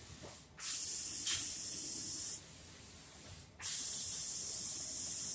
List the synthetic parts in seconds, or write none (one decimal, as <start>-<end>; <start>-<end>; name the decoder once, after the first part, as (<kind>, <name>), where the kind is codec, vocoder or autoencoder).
2.0-4.2 (vocoder, BigVGAN v2)